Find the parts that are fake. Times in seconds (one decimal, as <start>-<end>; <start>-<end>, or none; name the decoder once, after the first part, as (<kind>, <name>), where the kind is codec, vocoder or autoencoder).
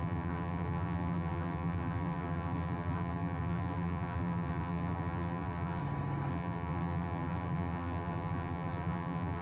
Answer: 0.0-5.8 (vocoder, BigVGAN v2); 6.3-9.4